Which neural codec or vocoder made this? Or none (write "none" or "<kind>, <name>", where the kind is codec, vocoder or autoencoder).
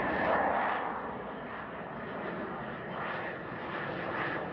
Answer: none